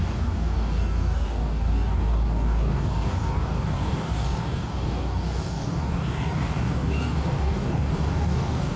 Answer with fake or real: fake